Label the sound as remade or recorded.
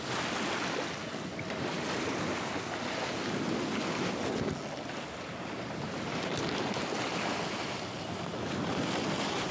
recorded